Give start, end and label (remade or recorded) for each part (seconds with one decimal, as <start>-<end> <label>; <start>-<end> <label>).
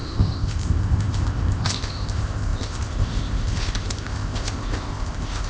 0.0-5.5 remade